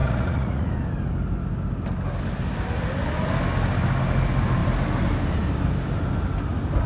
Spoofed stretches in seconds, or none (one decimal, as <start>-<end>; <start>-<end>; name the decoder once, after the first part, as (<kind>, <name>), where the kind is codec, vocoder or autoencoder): 0.0-0.7 (vocoder, Vocos)

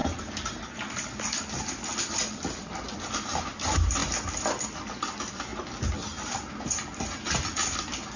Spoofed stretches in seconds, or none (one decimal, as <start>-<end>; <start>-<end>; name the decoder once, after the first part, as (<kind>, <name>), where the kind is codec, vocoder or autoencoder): 0.0-3.1 (vocoder, BigVGAN v2); 4.0-4.9

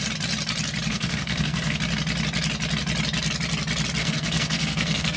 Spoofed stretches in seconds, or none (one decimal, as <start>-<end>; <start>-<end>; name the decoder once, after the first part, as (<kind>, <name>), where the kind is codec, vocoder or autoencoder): 0.9-1.8 (codec, SNAC); 4.0-5.2

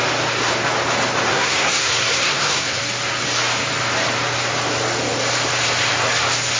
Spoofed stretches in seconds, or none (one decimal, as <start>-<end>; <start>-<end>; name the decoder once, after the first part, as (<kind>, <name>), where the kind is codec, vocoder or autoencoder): 1.3-2.8 (codec, SNAC)

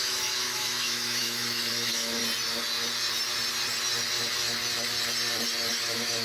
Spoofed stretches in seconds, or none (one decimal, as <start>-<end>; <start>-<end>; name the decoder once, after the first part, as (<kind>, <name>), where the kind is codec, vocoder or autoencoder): 0.0-2.2 (autoencoder, DAC-VAE); 5.7-6.2

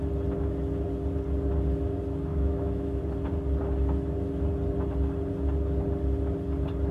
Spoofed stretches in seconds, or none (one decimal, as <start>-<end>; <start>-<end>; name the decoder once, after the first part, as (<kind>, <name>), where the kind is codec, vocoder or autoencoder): 2.3-3.0 (autoencoder, DAC-VAE)

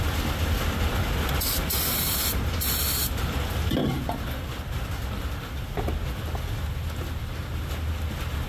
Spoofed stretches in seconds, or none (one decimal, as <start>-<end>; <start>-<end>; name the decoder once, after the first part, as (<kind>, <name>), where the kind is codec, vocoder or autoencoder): none

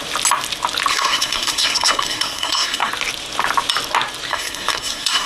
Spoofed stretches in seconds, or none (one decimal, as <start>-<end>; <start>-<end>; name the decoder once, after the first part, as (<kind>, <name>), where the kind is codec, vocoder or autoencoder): 0.9-2.9 (codec, SNAC); 4.3-5.3